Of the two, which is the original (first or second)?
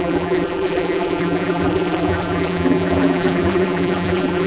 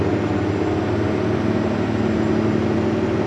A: second